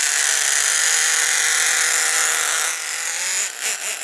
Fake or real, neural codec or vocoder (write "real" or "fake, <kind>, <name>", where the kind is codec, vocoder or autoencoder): real